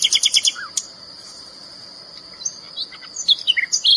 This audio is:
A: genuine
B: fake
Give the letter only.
A